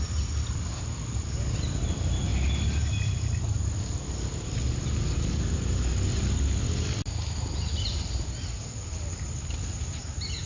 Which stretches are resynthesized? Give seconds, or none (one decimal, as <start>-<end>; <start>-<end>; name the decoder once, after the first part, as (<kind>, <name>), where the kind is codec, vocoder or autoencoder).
none